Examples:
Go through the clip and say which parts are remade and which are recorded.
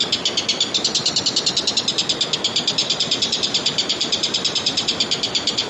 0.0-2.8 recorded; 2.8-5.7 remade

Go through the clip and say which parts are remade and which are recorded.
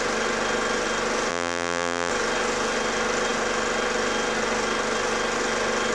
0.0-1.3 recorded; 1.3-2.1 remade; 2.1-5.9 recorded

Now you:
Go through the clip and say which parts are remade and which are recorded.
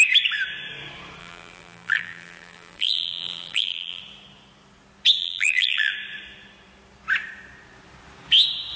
0.0-1.2 recorded; 1.2-4.0 remade; 4.0-5.2 recorded; 5.2-5.9 remade; 5.9-8.8 recorded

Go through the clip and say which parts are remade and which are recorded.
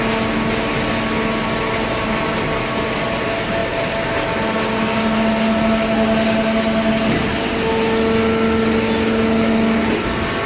0.0-10.5 recorded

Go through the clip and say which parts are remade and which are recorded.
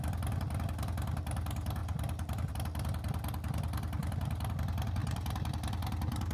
0.0-5.0 recorded; 5.0-5.5 remade; 5.5-6.3 recorded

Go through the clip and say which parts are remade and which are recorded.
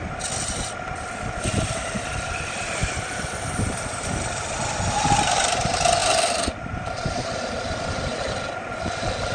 0.0-2.8 recorded; 2.8-4.1 remade; 4.1-9.3 recorded